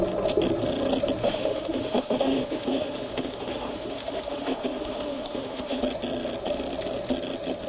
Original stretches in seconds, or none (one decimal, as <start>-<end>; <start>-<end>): 0.0-1.2; 5.8-7.7